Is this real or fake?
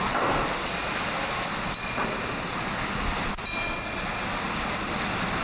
real